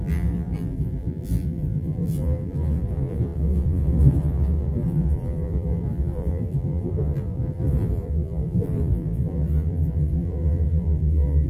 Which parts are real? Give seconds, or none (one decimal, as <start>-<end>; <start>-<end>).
none